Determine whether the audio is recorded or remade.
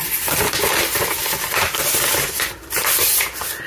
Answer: remade